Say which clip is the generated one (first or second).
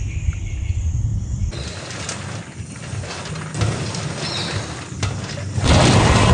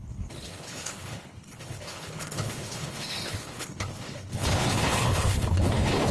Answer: second